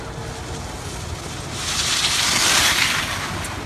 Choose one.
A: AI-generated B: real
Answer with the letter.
B